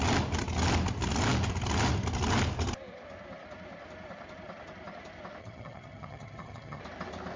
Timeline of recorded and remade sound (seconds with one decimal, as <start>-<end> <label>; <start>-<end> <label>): 0.0-5.4 recorded; 5.4-6.8 remade; 6.8-7.4 recorded